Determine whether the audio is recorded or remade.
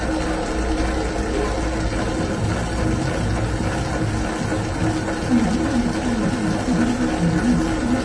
recorded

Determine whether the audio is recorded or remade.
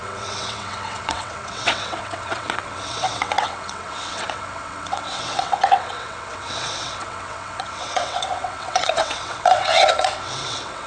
remade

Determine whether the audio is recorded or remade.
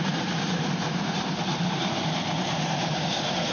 remade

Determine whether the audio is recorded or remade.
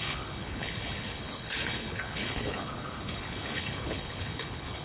remade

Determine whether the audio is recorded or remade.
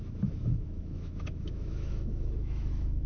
remade